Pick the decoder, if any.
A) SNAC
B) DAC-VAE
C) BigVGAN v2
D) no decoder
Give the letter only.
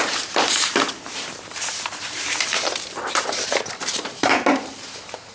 C